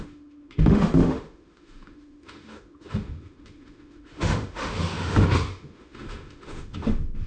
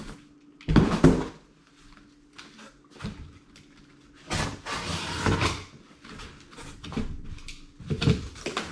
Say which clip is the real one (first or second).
second